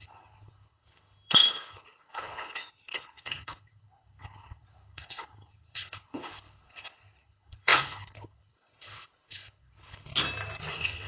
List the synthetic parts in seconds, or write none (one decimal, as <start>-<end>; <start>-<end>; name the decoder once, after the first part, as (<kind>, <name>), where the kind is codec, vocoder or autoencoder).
0.0-10.1 (codec, HILCodec); 10.7-11.1